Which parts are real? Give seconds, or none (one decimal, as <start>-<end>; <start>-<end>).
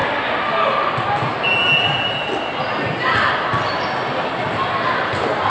0.0-5.5